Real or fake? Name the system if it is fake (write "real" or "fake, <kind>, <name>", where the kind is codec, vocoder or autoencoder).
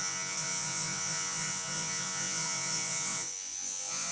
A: fake, vocoder, Vocos